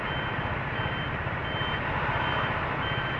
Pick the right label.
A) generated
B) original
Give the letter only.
B